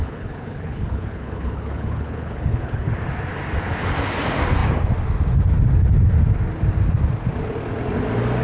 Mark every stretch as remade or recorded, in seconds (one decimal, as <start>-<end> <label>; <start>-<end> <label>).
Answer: 0.0-2.9 remade; 2.9-8.4 recorded